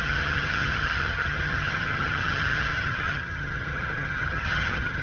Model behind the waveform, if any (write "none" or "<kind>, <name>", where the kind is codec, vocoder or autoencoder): vocoder, HiFi-GAN